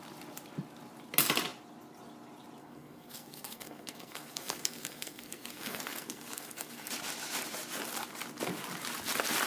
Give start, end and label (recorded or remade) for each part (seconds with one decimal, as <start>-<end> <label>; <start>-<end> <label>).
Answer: 0.0-2.6 recorded; 2.6-6.9 remade; 6.9-9.5 recorded